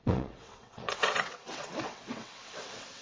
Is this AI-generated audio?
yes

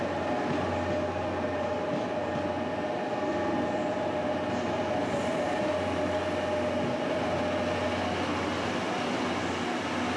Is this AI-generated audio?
no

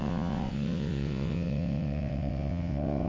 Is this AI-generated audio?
yes